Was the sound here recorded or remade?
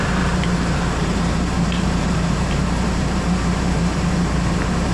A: remade